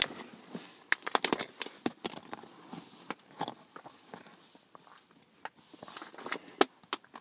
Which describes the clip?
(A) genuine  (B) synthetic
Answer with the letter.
A